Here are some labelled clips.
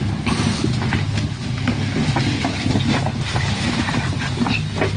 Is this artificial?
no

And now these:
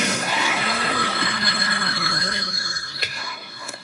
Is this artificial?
yes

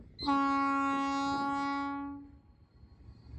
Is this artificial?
no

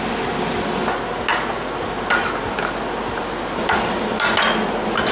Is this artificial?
no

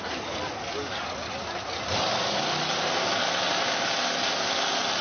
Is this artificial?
no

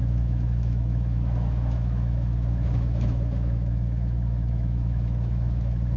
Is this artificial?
yes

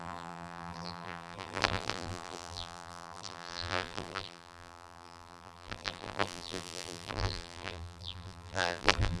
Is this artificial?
yes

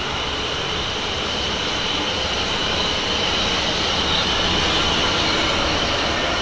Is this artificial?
no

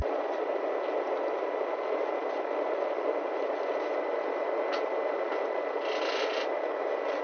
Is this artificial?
no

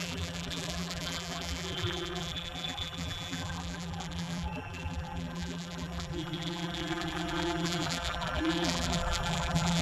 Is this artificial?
yes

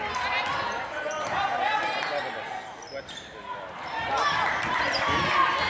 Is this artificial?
no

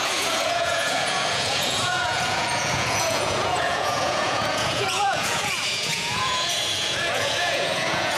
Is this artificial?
yes